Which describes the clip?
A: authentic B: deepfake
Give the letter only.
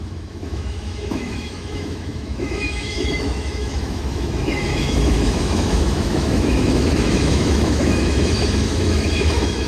B